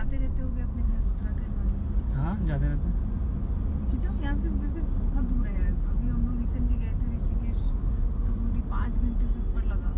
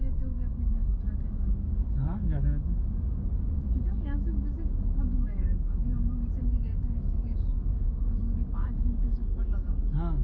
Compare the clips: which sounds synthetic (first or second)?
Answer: second